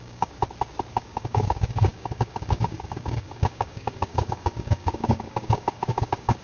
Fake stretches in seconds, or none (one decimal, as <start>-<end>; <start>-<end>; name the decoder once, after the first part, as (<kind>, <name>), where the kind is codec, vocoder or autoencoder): 0.0-0.4 (codec, DAC); 0.9-6.4

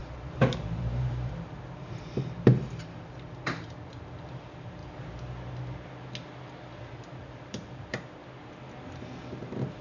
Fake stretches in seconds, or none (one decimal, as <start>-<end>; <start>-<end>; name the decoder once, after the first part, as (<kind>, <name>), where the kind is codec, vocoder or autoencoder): 0.0-4.8 (vocoder, BigVGAN v2); 7.2-8.2; 8.9-9.8

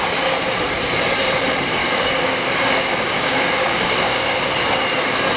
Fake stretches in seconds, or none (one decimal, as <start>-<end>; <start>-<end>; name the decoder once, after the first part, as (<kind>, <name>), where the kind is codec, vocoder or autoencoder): 1.8-4.3 (codec, DAC)

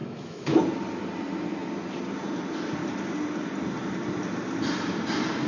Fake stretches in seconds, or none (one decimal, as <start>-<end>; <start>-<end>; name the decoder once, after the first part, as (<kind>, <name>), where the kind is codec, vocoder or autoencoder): 0.0-0.6 (autoencoder, DAC-VAE)

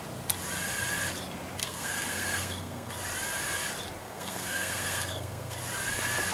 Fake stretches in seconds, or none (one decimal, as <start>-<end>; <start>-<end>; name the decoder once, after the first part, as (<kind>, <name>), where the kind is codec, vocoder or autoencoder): 1.6-2.9 (codec, SNAC); 4.0-5.6

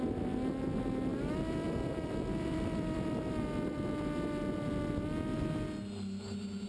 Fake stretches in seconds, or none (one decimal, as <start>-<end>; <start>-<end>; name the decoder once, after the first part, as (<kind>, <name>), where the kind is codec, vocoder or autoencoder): 1.1-3.3 (vocoder, BigVGAN v2)

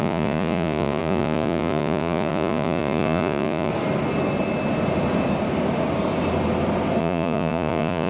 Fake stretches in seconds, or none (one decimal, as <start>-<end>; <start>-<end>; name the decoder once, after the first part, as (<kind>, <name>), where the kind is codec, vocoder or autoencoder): 0.0-3.7 (vocoder, Vocos); 7.0-8.1